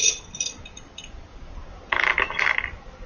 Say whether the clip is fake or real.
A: real